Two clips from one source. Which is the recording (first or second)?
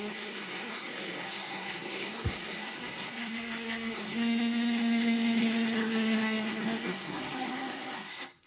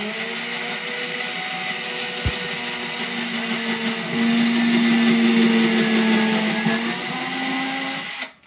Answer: second